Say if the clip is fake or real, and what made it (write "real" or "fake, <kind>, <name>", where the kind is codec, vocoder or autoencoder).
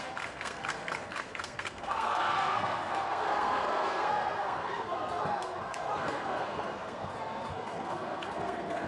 fake, codec, SNAC